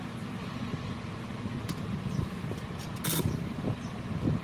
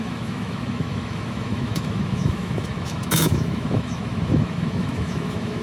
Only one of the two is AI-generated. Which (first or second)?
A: second